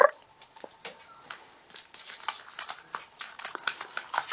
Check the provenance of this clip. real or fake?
real